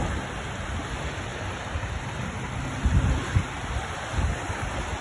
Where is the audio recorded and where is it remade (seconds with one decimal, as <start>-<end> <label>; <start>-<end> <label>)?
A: 0.0-5.0 recorded